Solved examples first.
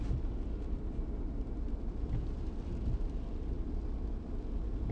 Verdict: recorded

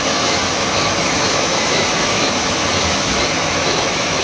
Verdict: remade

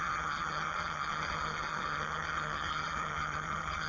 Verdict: remade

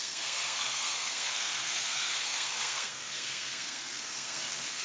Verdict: remade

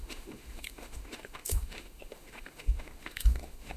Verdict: remade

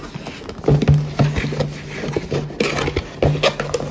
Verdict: recorded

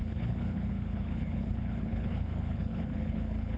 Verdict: remade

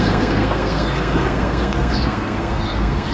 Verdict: remade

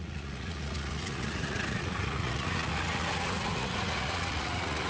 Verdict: remade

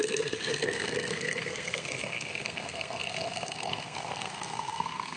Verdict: remade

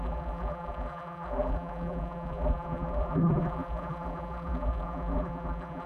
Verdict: remade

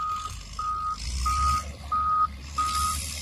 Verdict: recorded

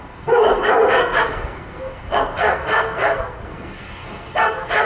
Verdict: remade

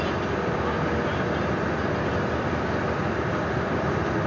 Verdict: recorded